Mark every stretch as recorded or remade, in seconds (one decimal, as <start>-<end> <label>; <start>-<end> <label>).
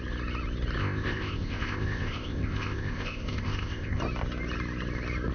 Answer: 0.0-0.8 recorded; 0.8-4.0 remade; 4.0-5.3 recorded